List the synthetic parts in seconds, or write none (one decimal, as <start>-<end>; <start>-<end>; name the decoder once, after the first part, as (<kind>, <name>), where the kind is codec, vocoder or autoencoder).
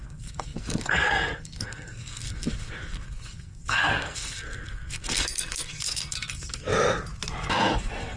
0.0-6.7 (codec, SNAC); 7.5-8.2